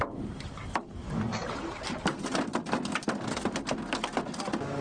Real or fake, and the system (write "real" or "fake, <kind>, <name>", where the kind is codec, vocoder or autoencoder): real